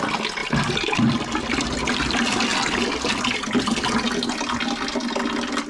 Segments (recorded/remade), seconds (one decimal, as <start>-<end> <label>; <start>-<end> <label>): 0.0-0.4 recorded; 0.4-1.0 remade; 1.0-5.7 recorded